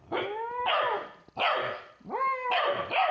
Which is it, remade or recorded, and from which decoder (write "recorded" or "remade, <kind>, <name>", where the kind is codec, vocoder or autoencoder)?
recorded